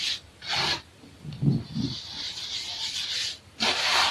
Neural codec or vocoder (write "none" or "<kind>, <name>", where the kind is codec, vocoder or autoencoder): none